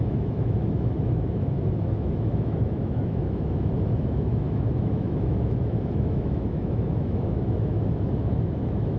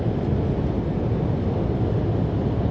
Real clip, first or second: second